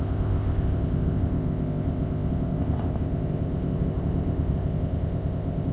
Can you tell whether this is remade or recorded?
remade